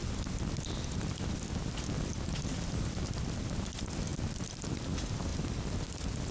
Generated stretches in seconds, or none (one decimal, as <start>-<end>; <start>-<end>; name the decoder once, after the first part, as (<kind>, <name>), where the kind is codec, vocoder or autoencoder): none